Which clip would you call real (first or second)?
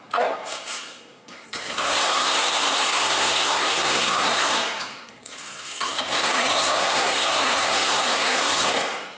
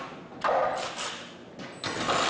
second